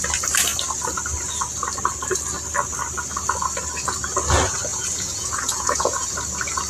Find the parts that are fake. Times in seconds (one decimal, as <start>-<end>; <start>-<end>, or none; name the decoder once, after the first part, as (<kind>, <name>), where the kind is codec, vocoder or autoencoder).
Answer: 4.7-6.1 (vocoder, Vocos)